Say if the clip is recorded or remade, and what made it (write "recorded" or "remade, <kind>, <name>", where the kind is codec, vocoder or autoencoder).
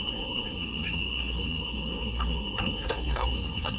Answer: remade, codec, SNAC